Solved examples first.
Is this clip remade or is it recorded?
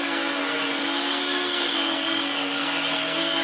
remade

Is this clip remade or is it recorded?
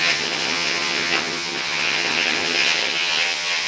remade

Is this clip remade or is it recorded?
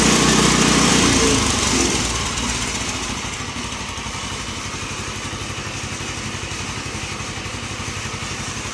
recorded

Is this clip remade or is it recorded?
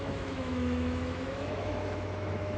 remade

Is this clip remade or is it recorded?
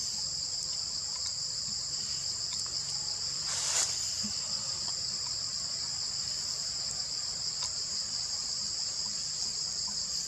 remade